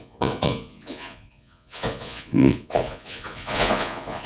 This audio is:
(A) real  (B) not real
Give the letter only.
B